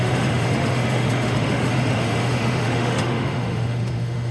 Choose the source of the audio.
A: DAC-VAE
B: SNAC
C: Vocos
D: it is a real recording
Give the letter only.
A